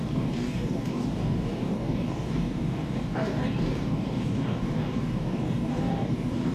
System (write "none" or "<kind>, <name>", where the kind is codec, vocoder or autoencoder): codec, DAC